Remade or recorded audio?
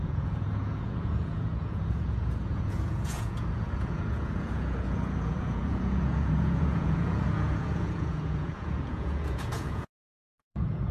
remade